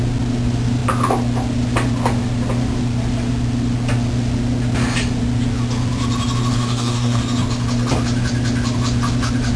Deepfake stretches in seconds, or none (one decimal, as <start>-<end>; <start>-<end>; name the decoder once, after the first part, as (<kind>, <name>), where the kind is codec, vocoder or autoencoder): 6.5-7.2 (codec, DAC)